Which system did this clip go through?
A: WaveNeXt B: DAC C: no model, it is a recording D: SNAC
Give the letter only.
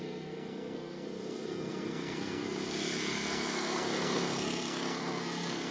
D